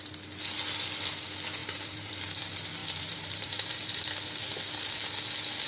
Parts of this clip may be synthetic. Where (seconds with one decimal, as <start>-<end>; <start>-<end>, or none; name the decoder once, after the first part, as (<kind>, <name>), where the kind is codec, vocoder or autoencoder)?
1.6-2.1 (vocoder, BigVGAN v2); 2.8-4.1